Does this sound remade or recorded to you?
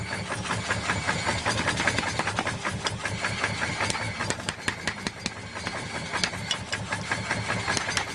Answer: recorded